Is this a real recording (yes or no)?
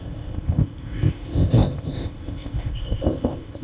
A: no